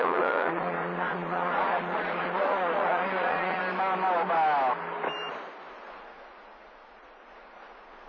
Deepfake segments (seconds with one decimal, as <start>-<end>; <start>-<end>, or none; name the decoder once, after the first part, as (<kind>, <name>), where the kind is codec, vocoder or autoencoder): 0.0-3.6 (vocoder, Vocos); 5.8-8.1